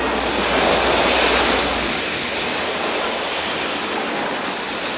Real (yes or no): yes